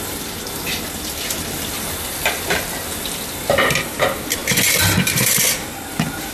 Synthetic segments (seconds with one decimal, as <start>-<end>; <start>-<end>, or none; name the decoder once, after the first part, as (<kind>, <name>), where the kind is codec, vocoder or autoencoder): none